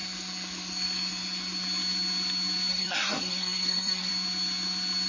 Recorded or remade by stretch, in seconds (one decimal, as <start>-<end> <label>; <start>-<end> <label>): 0.0-2.7 recorded; 2.7-4.1 remade; 4.1-5.1 recorded